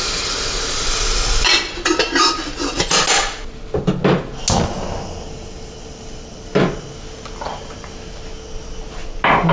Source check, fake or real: real